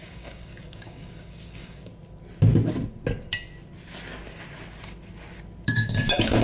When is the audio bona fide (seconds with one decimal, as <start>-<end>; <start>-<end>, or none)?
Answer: 1.9-5.7